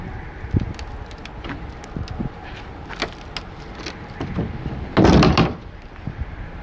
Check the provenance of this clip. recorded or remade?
recorded